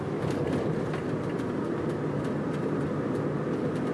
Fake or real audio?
real